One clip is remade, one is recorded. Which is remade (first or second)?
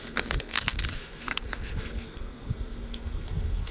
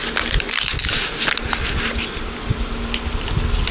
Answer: first